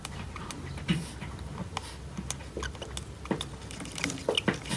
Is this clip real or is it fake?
real